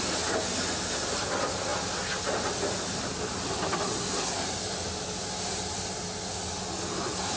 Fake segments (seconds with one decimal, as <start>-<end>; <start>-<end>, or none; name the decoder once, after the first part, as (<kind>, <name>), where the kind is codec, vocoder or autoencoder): 1.7-5.2 (vocoder, BigVGAN v2)